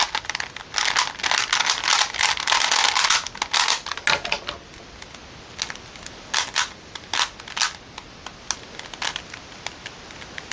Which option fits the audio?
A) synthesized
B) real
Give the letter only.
B